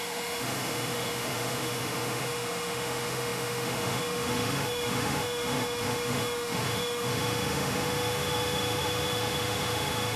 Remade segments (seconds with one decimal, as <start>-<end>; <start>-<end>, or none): 0.0-10.2